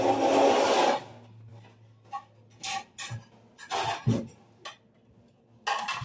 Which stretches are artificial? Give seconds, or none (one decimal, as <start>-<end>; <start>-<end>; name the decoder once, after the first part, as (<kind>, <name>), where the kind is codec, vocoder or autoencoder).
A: none